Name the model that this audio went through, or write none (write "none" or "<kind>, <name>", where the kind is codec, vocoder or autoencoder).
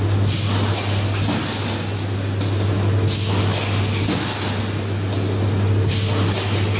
none